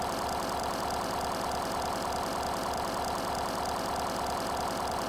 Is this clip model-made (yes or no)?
no